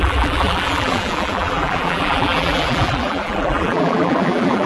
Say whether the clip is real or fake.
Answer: fake